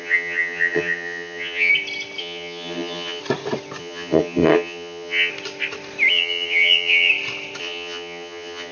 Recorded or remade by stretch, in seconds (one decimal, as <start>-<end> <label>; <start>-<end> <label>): 0.0-1.7 remade; 1.7-2.2 recorded; 2.2-3.2 remade; 3.2-3.8 recorded; 3.8-5.3 remade; 5.3-6.1 recorded; 6.1-7.1 remade; 7.1-7.6 recorded; 7.6-8.7 remade